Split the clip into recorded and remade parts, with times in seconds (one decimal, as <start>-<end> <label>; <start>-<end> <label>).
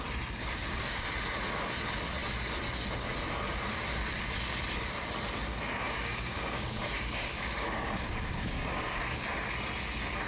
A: 0.0-0.4 recorded; 0.4-1.1 remade; 1.1-5.5 recorded; 5.5-9.0 remade; 9.0-10.3 recorded